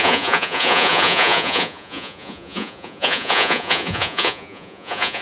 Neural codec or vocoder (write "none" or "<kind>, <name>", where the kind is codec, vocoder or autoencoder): vocoder, Vocos